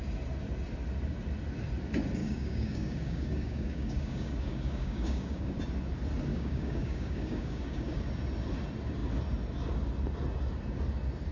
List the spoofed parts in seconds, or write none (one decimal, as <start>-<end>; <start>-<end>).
2.2-5.6; 6.3-8.0